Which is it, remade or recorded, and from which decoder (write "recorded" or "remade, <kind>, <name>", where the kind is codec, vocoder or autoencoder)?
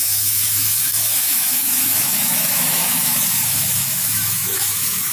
remade, autoencoder, DAC-VAE